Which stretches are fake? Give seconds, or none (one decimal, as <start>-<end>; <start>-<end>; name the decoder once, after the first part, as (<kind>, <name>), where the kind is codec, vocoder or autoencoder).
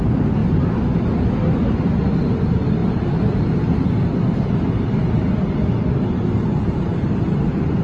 none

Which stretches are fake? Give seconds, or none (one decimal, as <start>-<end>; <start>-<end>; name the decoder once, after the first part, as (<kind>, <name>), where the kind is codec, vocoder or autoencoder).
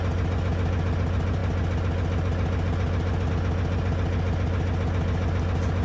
none